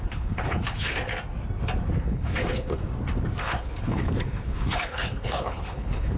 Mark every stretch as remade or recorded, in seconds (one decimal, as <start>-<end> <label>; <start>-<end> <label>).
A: 0.0-1.1 remade; 1.1-2.0 recorded; 2.0-2.8 remade; 2.8-3.4 recorded; 3.4-6.2 remade